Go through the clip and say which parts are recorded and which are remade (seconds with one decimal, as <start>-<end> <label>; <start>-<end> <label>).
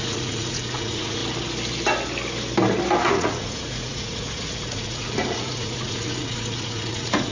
0.0-1.2 remade; 1.2-3.0 recorded; 3.0-7.3 remade